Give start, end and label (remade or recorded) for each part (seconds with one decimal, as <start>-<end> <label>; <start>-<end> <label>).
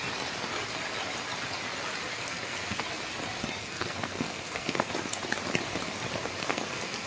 0.0-2.1 recorded; 2.1-2.8 remade; 2.8-3.6 recorded; 3.6-4.9 remade; 4.9-6.4 recorded; 6.4-7.1 remade